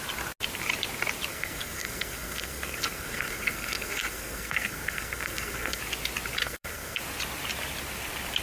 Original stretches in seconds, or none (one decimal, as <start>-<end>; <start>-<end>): 0.0-1.3; 5.8-6.4; 7.0-8.4